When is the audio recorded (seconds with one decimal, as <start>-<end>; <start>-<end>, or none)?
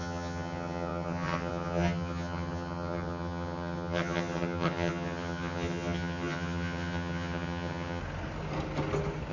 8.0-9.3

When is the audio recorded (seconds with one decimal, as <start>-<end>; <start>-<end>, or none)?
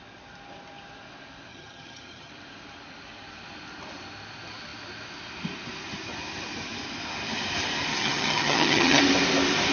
0.0-1.5; 2.3-7.9; 9.0-9.7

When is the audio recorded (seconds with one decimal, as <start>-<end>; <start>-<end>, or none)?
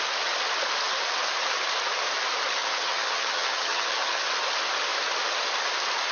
0.0-2.6; 4.2-6.1